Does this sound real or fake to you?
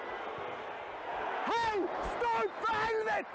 real